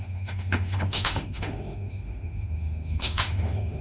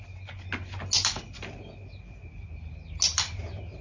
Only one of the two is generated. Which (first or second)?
first